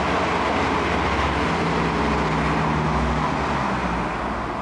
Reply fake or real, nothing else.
real